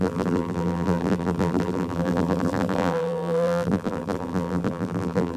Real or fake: fake